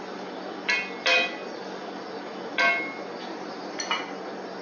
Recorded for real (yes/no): yes